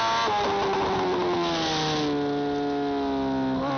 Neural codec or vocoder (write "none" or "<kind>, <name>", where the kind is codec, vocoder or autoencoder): none